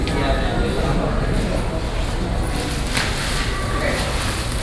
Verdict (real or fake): real